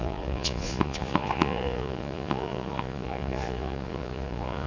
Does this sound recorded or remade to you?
remade